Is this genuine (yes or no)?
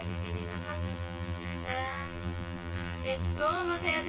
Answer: no